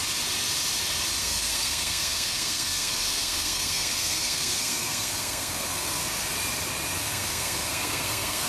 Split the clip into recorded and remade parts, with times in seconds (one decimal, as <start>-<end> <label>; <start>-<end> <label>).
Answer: 0.0-1.2 recorded; 1.2-6.0 remade; 6.0-7.0 recorded; 7.0-8.5 remade